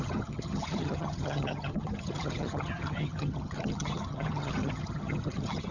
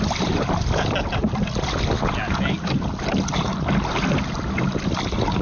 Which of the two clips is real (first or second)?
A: second